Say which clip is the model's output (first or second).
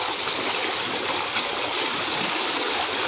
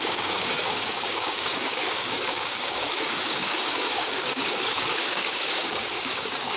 second